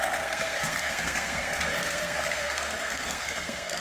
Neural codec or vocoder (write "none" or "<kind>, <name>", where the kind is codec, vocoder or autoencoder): codec, SNAC